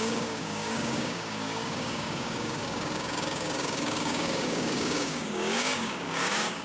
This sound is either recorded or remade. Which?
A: remade